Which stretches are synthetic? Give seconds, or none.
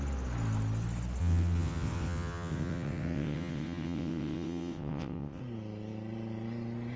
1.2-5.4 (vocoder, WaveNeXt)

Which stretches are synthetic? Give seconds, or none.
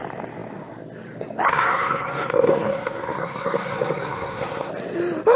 1.5-4.7 (codec, SNAC)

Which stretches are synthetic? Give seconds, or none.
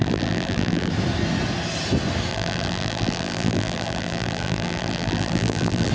0.0-0.9 (vocoder, BigVGAN v2); 2.3-5.9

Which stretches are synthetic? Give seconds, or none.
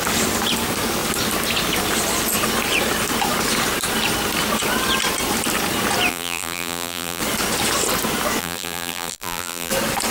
6.1-7.2 (vocoder, BigVGAN v2); 8.4-9.7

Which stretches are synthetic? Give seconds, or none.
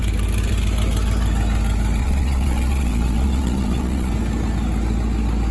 2.0-4.1 (vocoder, Vocos)